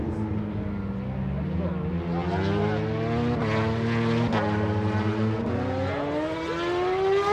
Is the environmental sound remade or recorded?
recorded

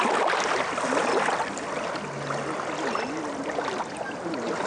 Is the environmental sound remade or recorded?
recorded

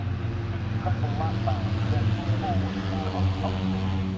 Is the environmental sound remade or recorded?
recorded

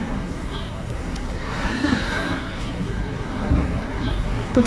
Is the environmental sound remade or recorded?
remade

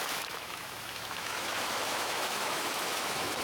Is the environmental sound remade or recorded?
remade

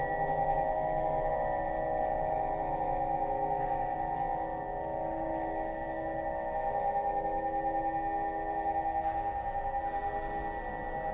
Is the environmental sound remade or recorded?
recorded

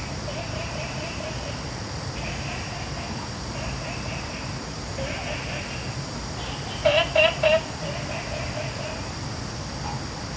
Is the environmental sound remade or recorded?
recorded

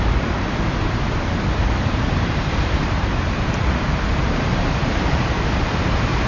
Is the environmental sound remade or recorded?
remade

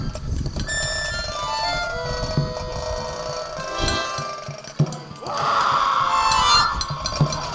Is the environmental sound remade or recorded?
recorded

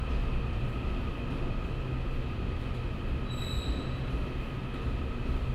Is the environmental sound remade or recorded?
recorded